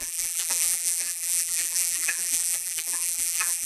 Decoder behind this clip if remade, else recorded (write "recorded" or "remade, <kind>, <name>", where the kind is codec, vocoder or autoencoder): remade, vocoder, BigVGAN v2